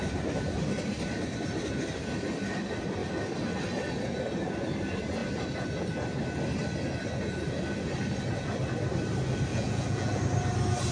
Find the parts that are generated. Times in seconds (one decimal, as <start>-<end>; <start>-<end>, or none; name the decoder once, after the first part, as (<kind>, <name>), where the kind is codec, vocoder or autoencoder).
9.5-10.2 (vocoder, Vocos)